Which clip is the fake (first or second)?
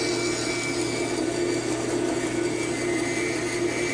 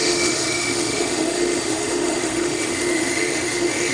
second